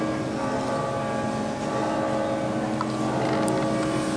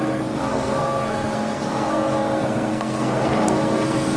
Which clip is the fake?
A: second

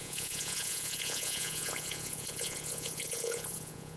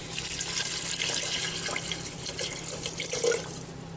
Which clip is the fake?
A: first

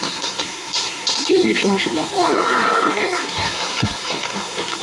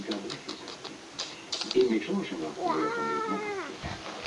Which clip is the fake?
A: first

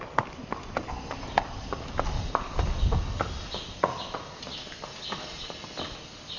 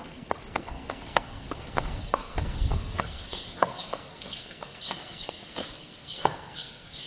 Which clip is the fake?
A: second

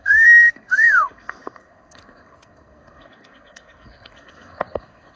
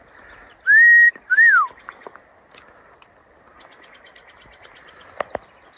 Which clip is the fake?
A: first